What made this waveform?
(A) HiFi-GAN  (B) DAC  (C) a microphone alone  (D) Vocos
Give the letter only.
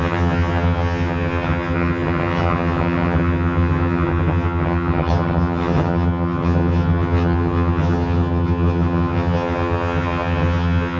A